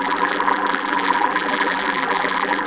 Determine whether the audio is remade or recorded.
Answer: remade